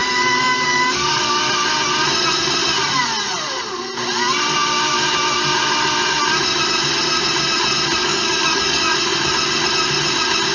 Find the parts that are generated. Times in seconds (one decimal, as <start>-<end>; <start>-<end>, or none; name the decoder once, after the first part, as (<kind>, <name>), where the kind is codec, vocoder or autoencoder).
0.0-1.4 (codec, DAC); 8.0-8.8